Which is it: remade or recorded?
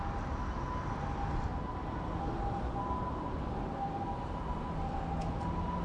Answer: recorded